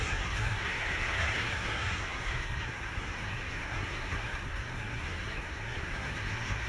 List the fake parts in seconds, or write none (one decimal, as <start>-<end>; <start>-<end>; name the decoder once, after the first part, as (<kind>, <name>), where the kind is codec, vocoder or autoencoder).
0.0-6.7 (codec, SNAC)